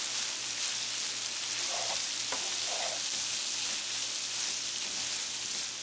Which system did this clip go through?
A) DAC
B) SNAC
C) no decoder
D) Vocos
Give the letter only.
C